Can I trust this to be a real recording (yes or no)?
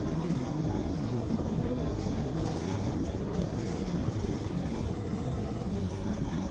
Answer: no